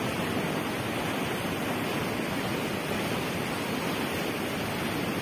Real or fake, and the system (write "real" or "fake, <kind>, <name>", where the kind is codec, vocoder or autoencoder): real